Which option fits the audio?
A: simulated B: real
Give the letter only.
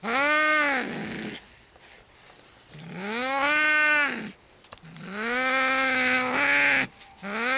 B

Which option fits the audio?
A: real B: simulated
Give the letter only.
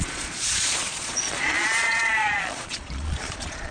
B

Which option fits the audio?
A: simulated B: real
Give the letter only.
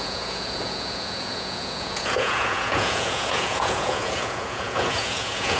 A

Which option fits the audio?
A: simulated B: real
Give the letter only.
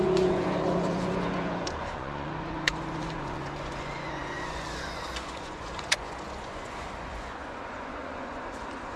A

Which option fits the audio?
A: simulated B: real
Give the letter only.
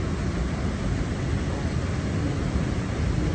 B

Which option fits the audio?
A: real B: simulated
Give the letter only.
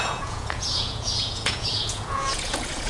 B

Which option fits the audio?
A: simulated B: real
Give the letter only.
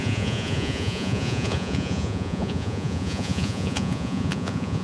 A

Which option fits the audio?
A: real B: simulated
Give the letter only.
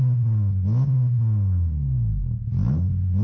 A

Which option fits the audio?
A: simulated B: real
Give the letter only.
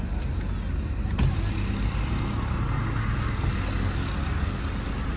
B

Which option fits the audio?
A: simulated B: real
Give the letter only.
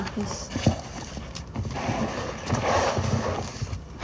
B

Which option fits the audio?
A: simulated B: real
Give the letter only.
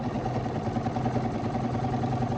B